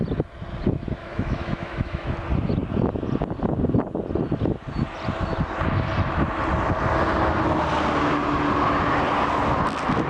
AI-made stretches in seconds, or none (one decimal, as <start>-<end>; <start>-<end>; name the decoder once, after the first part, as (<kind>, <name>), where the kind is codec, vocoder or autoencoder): 1.0-2.1 (autoencoder, DAC-VAE)